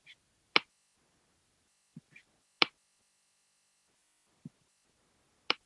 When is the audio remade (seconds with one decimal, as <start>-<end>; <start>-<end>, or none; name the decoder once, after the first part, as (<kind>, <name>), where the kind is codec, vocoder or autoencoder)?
none